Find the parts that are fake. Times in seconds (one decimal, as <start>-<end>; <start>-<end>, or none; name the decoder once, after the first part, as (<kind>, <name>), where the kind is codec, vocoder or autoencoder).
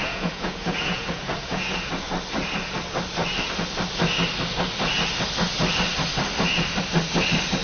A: 0.0-1.9 (vocoder, Vocos)